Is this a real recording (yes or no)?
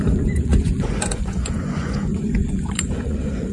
no